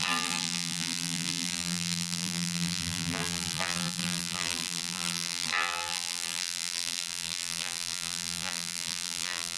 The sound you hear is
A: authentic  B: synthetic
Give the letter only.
B